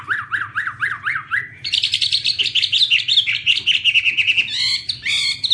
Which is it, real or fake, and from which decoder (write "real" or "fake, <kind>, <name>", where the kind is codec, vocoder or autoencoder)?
real